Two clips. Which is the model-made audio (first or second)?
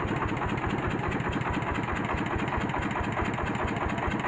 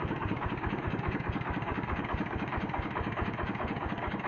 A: second